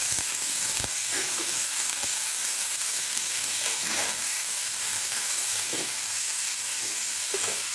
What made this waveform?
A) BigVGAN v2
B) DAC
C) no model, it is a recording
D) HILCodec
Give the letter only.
B